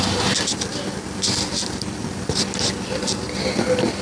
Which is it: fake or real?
real